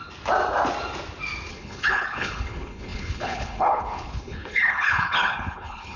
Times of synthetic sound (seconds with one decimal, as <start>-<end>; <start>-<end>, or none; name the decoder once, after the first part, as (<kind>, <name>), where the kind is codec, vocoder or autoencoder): 1.5-6.0 (codec, HILCodec)

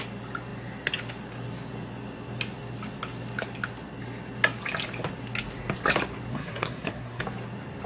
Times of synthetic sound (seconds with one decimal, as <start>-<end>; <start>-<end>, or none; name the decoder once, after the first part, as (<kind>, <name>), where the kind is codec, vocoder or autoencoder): 6.3-7.2 (codec, SNAC)

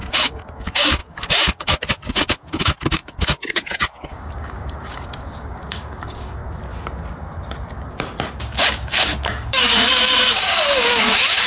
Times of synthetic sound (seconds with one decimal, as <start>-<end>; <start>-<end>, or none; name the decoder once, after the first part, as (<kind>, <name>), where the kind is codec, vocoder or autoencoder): 0.0-6.4 (codec, DAC); 8.3-11.5

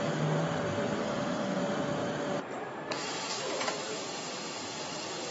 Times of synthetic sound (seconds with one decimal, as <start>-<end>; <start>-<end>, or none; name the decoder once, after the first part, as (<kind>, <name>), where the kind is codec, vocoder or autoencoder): 1.0-1.6 (autoencoder, DAC-VAE)

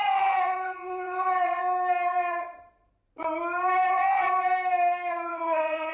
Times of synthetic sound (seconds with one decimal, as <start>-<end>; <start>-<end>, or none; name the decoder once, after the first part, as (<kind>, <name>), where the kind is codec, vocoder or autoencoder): 0.0-1.6 (vocoder, WaveNeXt); 3.9-4.3; 5.3-5.9

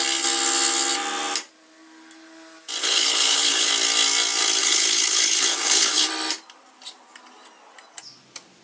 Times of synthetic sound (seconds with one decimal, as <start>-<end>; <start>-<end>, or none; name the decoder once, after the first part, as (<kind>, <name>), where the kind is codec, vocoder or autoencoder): 2.8-3.7 (codec, HILCodec); 4.6-6.1